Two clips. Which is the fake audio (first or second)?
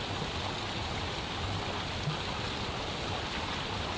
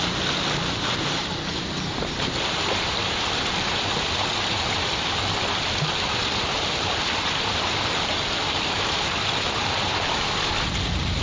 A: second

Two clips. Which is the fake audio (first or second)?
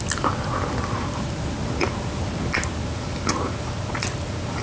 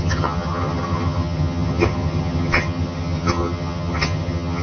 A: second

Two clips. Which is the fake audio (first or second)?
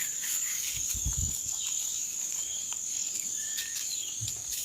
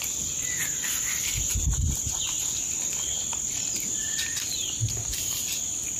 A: first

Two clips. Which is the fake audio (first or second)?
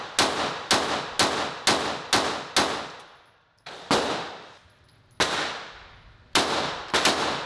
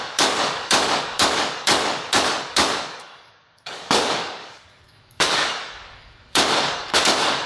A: second